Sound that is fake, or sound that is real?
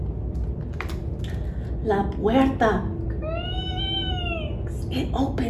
real